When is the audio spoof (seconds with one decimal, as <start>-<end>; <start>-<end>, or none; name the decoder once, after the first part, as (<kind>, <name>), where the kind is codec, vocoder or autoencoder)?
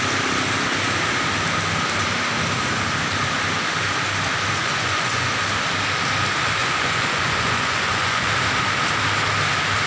4.6-5.3 (vocoder, Vocos); 6.6-8.3